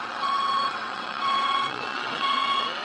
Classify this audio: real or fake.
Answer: fake